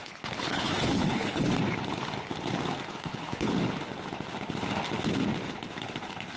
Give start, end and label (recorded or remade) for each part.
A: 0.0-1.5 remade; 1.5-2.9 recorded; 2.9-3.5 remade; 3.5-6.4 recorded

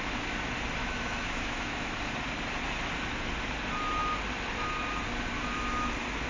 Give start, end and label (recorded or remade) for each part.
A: 0.0-0.8 recorded; 0.8-2.1 remade; 2.1-6.3 recorded

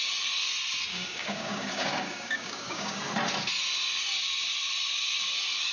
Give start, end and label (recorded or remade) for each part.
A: 0.0-0.9 recorded; 0.9-3.0 remade; 3.0-5.7 recorded

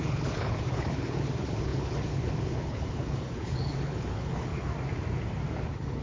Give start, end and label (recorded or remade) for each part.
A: 0.0-4.7 remade; 4.7-5.5 recorded; 5.5-6.0 remade

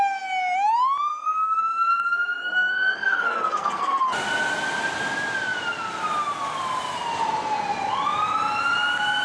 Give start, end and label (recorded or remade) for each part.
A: 0.0-1.1 recorded; 1.1-4.0 remade; 4.0-9.2 recorded

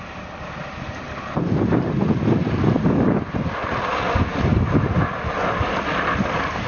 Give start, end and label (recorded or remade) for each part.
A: 0.0-6.7 recorded